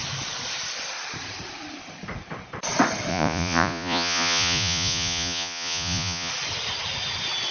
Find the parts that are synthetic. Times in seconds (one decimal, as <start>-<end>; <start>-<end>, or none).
3.1-6.3